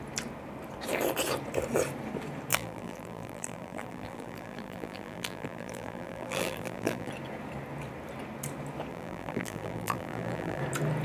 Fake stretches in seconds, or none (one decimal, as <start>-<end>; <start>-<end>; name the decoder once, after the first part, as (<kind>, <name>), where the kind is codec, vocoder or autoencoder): 2.5-7.1 (vocoder, BigVGAN v2); 8.9-10.6